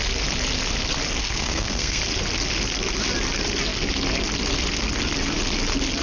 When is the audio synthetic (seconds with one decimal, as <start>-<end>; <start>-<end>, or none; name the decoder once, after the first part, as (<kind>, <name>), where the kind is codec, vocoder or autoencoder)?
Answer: 1.2-2.0 (codec, SNAC)